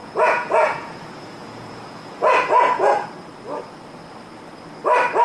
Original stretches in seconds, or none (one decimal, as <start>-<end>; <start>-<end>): 3.1-5.2

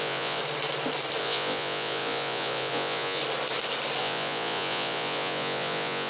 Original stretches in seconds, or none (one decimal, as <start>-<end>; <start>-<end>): 0.4-1.2; 3.2-4.0

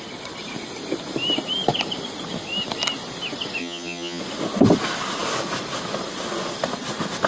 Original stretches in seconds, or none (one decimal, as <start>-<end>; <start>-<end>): 0.0-3.6; 4.2-7.3

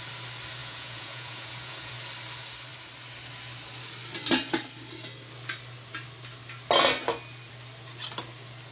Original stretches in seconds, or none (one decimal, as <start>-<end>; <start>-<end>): 0.0-0.6; 1.9-8.7

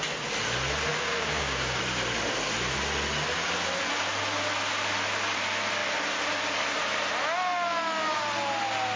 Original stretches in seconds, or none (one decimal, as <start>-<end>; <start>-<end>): 0.0-0.9; 1.8-9.0

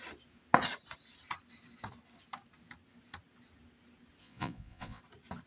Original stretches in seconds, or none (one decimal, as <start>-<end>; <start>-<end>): 0.0-4.2; 5.0-5.5

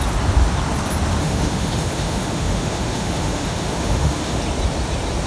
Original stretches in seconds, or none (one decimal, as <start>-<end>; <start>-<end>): 0.0-1.2; 4.4-5.3